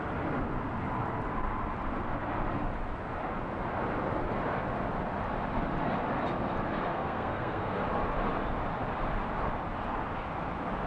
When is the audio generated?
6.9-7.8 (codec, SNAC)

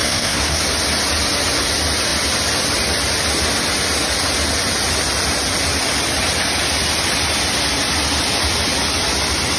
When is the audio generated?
0.0-0.6 (codec, SNAC)